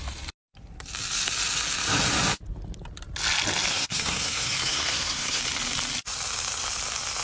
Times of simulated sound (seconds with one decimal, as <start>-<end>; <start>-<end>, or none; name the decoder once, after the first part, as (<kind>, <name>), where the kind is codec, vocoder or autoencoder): 3.7-5.4 (codec, SNAC)